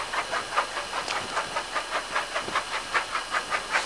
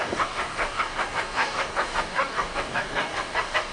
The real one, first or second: first